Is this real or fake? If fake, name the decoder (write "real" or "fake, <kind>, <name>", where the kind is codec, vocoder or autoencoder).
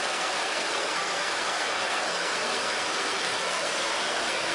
fake, codec, SNAC